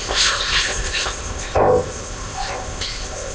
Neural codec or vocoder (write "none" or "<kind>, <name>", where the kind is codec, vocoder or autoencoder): codec, ZipCodec